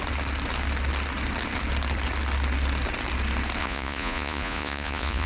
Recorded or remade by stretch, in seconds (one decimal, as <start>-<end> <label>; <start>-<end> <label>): 0.0-3.6 recorded; 3.6-5.3 remade

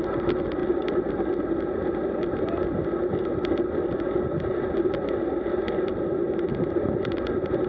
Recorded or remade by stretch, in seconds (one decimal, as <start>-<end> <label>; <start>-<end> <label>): 0.0-7.7 recorded

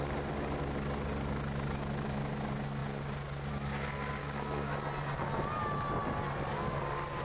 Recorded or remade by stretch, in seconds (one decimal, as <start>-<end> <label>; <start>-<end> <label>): 0.0-4.2 recorded; 4.2-4.7 remade; 4.7-7.2 recorded

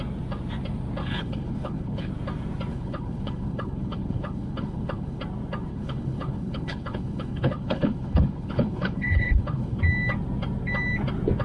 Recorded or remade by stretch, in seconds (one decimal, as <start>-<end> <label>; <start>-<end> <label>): 0.0-1.0 recorded; 1.0-2.1 remade; 2.1-2.7 recorded; 2.7-5.2 remade; 5.2-5.7 recorded; 5.7-9.8 remade; 9.8-11.4 recorded

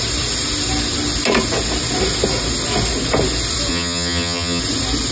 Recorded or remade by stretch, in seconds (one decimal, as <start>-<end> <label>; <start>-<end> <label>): 0.0-3.7 recorded; 3.7-4.6 remade; 4.6-5.1 recorded

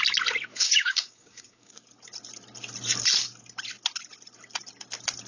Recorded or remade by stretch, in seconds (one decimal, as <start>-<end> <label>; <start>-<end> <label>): 0.0-0.5 recorded; 0.5-1.7 remade; 1.7-5.3 recorded